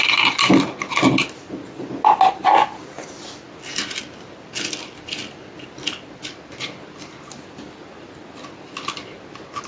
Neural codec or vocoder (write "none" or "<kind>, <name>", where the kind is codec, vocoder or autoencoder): none